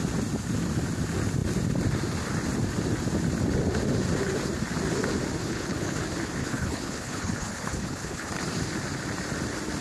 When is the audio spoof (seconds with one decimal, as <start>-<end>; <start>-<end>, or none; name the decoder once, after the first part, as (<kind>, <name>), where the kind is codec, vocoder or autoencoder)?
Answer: 5.4-6.0 (codec, HILCodec); 6.4-8.3